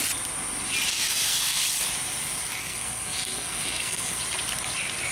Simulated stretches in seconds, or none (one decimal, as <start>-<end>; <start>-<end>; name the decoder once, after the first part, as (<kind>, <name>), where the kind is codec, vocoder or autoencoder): 0.9-1.6 (codec, SNAC); 2.6-4.2